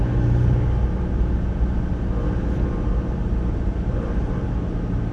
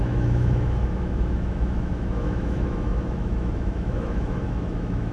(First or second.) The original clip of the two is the first